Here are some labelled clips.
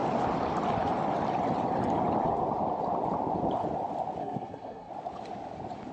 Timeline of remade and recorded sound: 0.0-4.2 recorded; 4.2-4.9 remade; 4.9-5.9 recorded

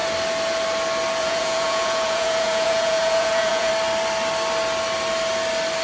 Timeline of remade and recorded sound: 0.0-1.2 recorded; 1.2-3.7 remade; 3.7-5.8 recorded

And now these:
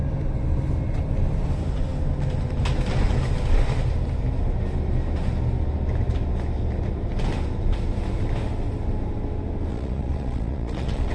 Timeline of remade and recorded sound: 0.0-9.7 recorded; 9.7-11.1 remade